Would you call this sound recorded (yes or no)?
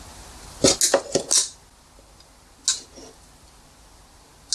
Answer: yes